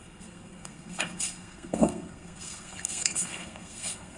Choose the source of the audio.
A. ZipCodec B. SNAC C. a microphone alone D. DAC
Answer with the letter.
B